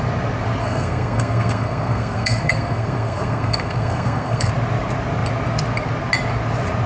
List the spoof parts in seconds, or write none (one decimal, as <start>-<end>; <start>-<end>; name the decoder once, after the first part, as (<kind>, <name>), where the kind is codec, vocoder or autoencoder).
0.6-4.5 (codec, SNAC)